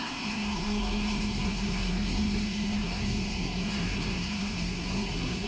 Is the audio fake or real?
fake